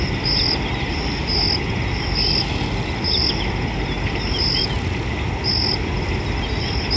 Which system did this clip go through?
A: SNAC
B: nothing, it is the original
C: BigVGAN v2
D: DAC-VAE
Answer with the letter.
B